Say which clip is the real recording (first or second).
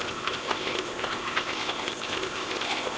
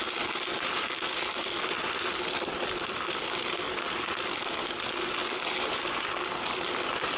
second